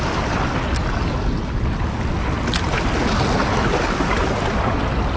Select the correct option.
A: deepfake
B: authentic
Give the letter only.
B